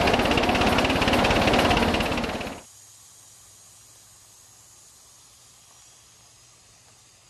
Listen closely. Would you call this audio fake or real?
real